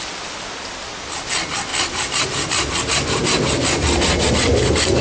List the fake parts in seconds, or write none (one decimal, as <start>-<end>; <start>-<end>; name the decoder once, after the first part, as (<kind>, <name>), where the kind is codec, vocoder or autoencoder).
none